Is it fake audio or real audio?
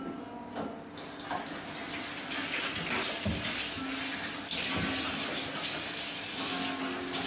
real